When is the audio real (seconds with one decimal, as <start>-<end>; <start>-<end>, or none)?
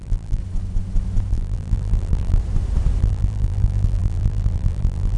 0.4-1.3; 2.4-3.0